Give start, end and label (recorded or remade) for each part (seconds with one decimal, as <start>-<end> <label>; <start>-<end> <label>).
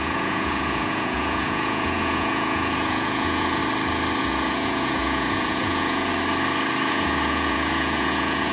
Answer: 0.0-3.6 remade; 3.6-4.2 recorded; 4.2-6.1 remade; 6.1-6.9 recorded; 6.9-8.5 remade